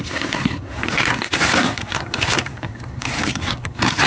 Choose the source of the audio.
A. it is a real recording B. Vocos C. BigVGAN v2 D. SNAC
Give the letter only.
D